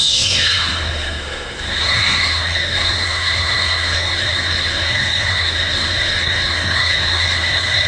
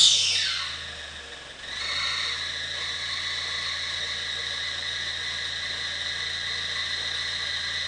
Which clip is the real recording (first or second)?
second